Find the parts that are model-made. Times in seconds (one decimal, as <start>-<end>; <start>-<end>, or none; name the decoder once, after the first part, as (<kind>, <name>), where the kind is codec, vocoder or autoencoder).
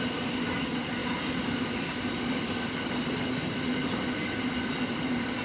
none